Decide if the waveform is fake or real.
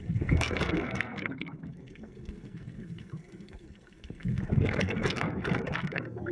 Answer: fake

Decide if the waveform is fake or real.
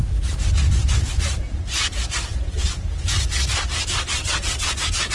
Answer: real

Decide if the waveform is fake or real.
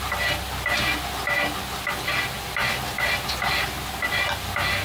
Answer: real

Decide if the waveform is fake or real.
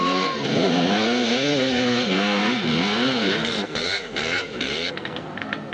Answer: fake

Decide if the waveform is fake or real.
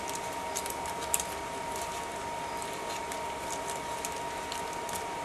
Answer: real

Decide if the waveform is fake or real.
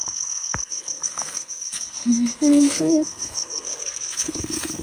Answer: fake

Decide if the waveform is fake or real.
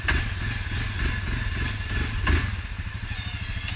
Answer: real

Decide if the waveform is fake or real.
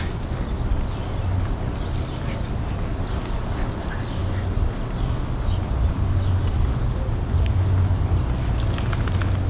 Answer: real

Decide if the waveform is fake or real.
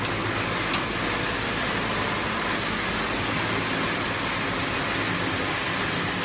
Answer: real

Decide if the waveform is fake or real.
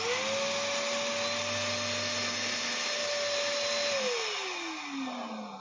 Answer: real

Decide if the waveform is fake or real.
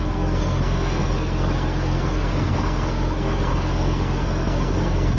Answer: fake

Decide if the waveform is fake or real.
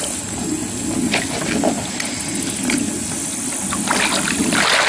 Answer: real